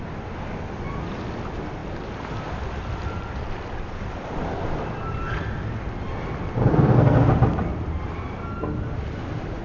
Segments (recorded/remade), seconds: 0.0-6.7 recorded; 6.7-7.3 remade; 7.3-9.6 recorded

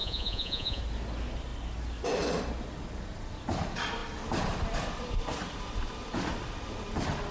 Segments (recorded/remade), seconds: 0.0-0.8 remade; 0.8-7.3 recorded

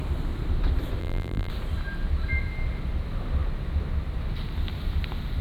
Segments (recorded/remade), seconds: 0.0-1.0 recorded; 1.0-1.5 remade; 1.5-5.4 recorded

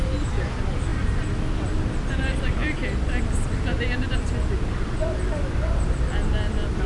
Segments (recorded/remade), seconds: 0.0-6.9 recorded

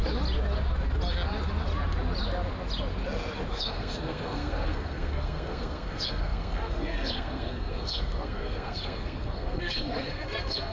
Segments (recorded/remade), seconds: 0.0-3.5 recorded; 3.5-10.7 remade

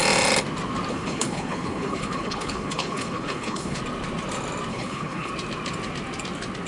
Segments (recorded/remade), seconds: 0.0-0.9 recorded; 0.9-3.8 remade; 3.8-4.7 recorded; 4.7-5.3 remade; 5.3-6.7 recorded

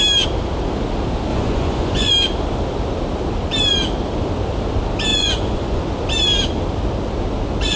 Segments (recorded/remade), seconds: 0.0-1.3 recorded; 1.3-2.1 remade; 2.1-5.1 recorded; 5.1-5.8 remade; 5.8-7.8 recorded